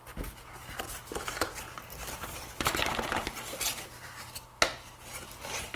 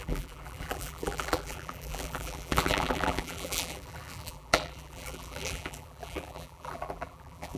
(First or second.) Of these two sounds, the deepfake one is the second